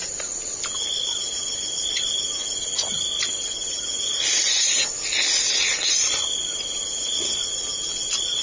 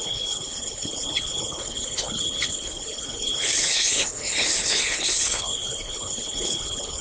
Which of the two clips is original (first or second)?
first